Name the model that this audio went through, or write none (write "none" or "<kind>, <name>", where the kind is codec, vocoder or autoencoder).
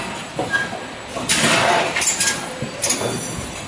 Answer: none